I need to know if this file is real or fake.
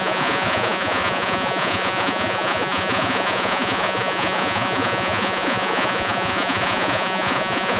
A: fake